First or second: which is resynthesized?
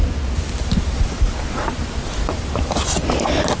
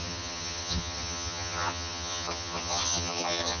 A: second